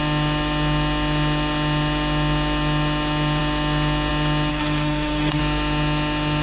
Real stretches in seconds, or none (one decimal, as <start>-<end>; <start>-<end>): 0.0-4.5; 5.4-6.4